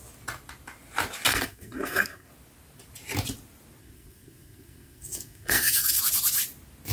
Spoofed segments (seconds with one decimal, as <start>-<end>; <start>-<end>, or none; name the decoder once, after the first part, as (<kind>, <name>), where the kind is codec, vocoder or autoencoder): 1.3-2.3 (codec, SNAC); 3.8-6.0